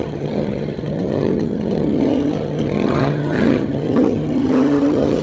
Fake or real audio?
fake